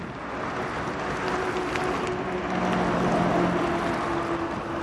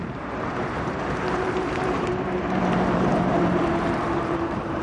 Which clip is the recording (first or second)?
first